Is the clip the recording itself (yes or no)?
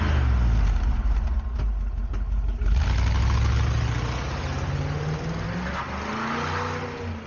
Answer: yes